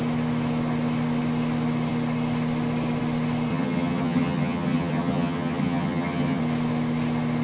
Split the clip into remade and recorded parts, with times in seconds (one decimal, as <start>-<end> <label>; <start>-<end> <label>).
0.0-3.5 recorded; 3.5-6.4 remade; 6.4-7.4 recorded